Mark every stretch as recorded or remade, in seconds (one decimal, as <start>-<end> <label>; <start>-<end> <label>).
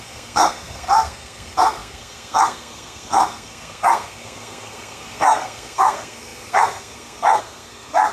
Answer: 0.0-8.1 remade